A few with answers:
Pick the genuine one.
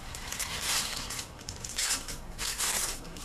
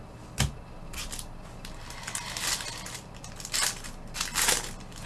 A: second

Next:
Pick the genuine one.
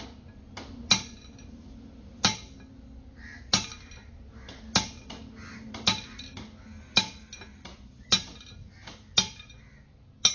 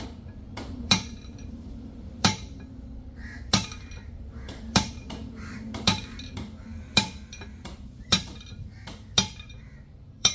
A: first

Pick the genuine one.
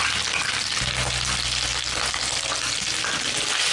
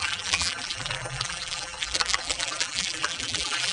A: first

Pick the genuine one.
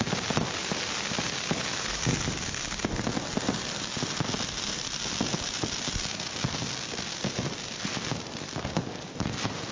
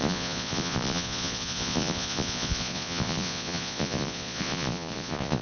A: first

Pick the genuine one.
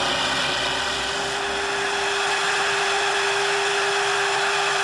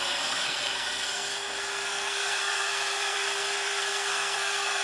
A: first